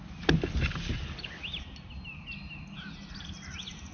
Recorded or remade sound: recorded